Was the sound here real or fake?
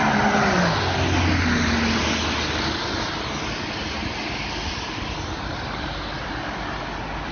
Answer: real